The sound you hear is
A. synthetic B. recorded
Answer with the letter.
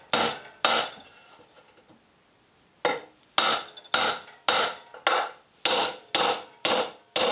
B